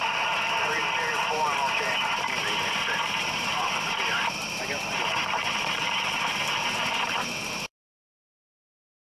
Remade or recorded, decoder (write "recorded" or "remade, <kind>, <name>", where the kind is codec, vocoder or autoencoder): remade, vocoder, BigVGAN v2